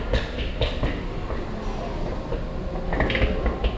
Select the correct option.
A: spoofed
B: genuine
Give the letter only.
B